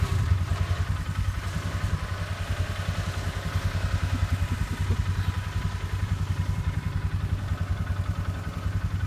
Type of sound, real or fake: real